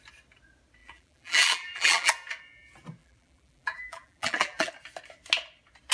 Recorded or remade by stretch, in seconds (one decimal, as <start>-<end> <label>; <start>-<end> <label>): 0.0-0.8 recorded; 0.8-2.1 remade; 2.1-3.0 recorded; 3.0-4.7 remade; 4.7-5.9 recorded